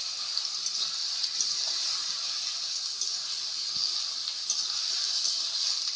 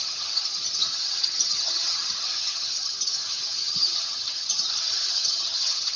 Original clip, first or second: first